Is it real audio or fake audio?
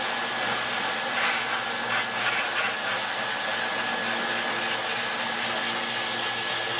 real